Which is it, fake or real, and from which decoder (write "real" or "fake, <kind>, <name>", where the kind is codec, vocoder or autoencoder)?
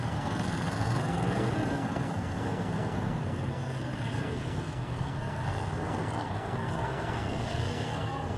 fake, codec, SNAC